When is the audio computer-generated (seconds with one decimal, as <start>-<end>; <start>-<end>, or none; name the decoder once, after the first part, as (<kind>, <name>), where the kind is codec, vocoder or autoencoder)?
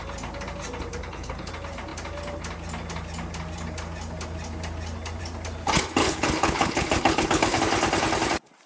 1.0-1.5 (codec, HILCodec); 6.0-7.6